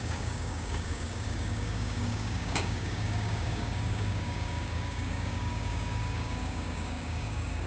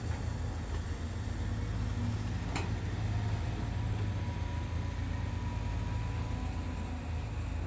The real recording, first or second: second